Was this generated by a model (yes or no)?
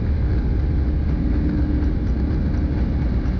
no